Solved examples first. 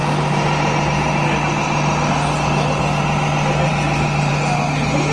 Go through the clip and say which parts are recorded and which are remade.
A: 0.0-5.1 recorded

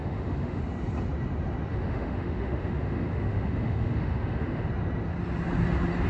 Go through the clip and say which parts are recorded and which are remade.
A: 0.0-0.6 remade; 0.6-1.7 recorded; 1.7-4.7 remade; 4.7-6.1 recorded